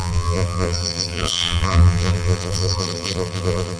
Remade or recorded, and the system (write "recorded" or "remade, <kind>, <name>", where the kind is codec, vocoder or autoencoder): remade, vocoder, BigVGAN v2